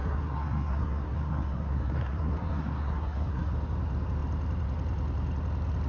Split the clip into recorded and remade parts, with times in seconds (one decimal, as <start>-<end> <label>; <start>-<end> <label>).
0.0-3.5 remade; 3.5-5.9 recorded